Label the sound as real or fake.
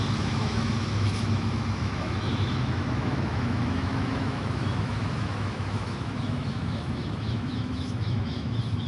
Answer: fake